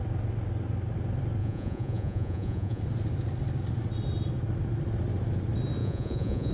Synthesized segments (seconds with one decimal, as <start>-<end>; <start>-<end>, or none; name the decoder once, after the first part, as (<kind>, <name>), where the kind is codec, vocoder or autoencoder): 1.4-2.8 (vocoder, Vocos); 5.8-6.5